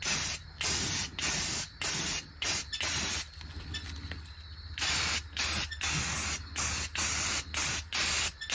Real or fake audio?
real